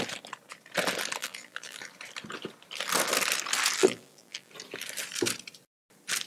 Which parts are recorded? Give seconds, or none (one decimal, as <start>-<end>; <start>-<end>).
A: 0.0-1.2; 1.9-3.8; 4.5-6.3